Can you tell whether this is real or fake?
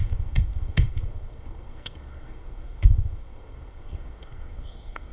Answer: fake